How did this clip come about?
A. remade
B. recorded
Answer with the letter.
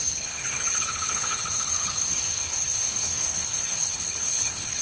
A